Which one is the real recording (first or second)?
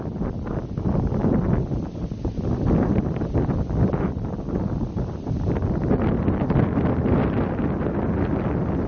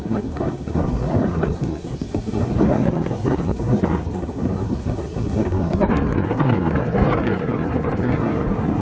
first